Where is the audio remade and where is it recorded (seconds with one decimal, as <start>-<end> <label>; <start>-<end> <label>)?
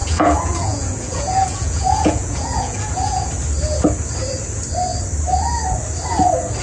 0.0-3.3 remade; 3.3-6.6 recorded